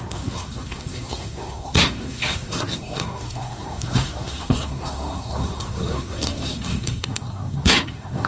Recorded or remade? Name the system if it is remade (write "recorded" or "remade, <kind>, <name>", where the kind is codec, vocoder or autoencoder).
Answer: remade, codec, SNAC